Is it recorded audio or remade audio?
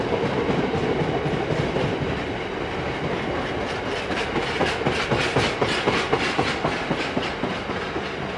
recorded